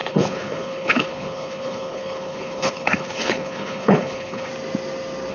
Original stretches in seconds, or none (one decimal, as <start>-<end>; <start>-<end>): 4.5-5.3